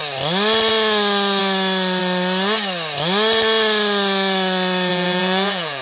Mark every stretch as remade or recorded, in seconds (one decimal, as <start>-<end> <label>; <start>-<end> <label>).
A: 0.0-4.9 recorded; 4.9-5.8 remade